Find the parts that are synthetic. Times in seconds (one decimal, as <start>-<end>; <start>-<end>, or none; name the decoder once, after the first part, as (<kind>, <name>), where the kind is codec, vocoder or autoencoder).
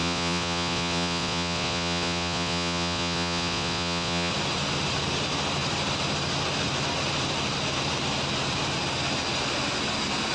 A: 0.0-4.3 (vocoder, Vocos)